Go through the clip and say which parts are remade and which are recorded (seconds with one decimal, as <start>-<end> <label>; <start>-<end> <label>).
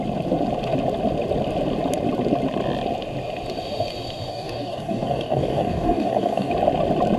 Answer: 0.0-4.3 recorded; 4.3-6.5 remade; 6.5-7.2 recorded